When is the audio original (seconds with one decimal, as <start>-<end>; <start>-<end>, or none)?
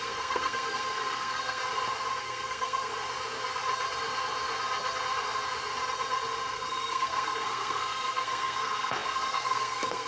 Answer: 1.6-2.2; 2.9-6.5